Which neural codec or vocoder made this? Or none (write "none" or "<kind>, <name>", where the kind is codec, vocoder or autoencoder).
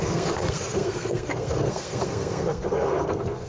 codec, SNAC